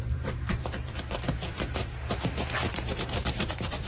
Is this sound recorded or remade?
remade